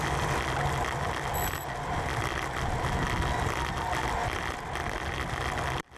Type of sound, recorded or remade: recorded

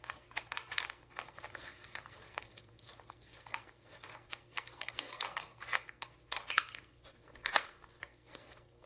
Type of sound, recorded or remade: remade